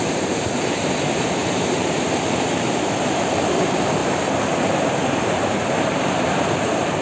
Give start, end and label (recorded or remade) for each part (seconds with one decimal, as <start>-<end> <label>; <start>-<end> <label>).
0.0-4.0 remade; 4.0-4.6 recorded; 4.6-7.0 remade